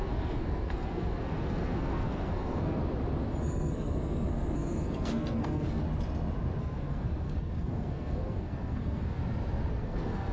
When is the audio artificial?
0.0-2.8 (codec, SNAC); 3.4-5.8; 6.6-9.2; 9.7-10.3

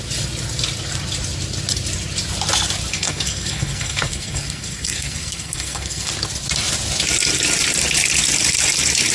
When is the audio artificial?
2.9-6.1 (codec, SNAC)

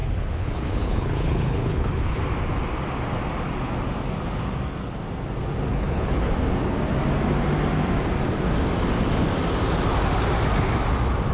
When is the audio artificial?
0.0-2.2 (codec, HILCodec); 5.7-6.3

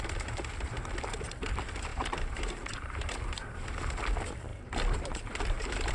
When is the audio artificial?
1.9-3.8 (vocoder, BigVGAN v2); 4.5-5.9

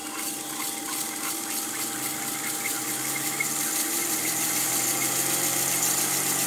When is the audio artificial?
none

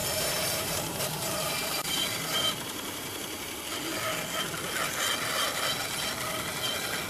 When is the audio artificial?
0.0-3.6 (vocoder, BigVGAN v2)

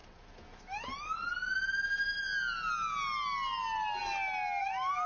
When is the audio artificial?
0.0-0.6 (vocoder, Vocos)

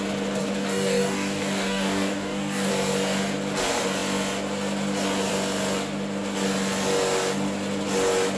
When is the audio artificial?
0.4-2.7 (codec, DAC)